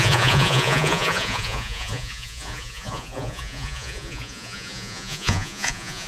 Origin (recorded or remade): remade